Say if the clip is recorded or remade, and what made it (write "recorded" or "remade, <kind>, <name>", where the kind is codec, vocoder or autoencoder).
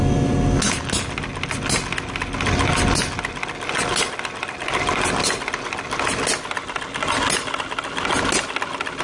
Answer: recorded